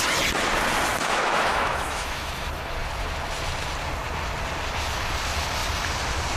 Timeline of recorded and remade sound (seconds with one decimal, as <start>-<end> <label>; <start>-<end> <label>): 0.0-0.9 recorded; 0.9-2.3 remade; 2.3-6.4 recorded